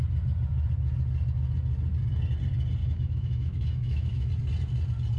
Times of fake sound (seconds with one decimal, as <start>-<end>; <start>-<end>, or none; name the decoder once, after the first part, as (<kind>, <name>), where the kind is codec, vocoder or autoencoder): 2.8-4.3 (autoencoder, DAC-VAE)